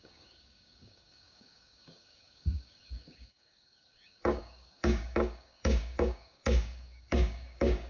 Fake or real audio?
fake